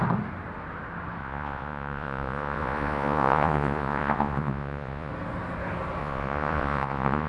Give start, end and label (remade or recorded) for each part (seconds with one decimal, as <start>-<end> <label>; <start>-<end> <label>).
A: 0.0-1.2 recorded; 1.2-5.1 remade; 5.1-6.0 recorded; 6.0-7.3 remade